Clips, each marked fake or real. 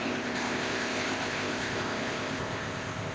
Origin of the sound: fake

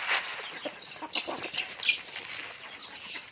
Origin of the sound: real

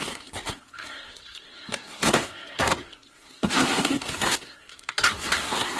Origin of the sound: fake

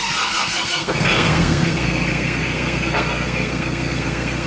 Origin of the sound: fake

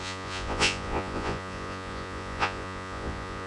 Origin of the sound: fake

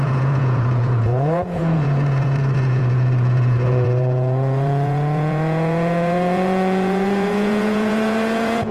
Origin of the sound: fake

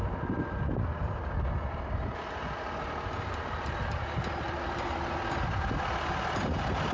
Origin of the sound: real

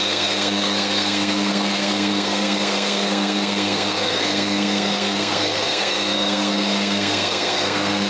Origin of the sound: fake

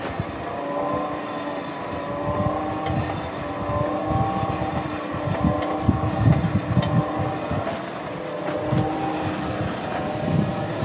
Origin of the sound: real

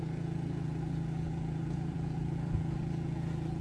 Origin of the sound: fake